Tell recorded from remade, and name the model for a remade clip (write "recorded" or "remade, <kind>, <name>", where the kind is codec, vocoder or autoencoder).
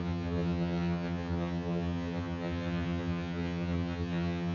remade, vocoder, HiFi-GAN